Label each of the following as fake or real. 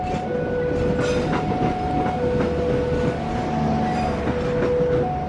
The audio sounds real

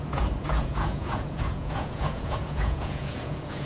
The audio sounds fake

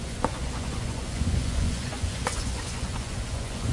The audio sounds fake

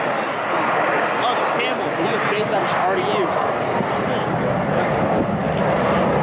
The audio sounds real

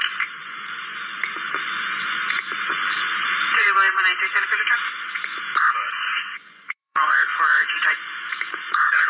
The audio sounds fake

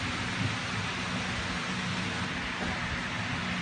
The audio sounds real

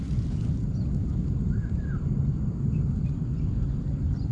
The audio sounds real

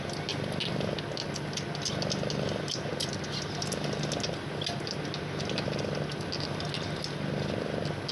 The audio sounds real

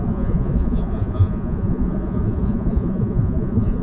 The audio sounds fake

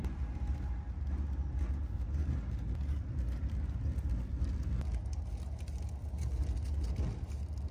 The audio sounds real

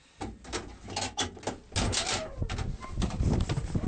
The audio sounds real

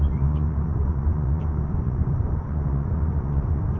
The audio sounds fake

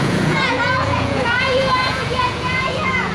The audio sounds fake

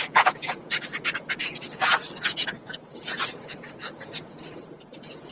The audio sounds fake